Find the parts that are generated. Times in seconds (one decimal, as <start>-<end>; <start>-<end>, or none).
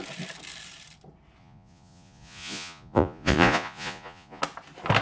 1.4-4.4